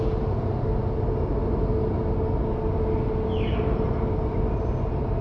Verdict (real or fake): real